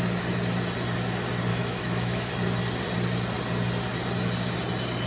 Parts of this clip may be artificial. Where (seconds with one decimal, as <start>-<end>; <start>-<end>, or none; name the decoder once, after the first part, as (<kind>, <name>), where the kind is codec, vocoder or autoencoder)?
1.5-2.3 (autoencoder, DAC-VAE)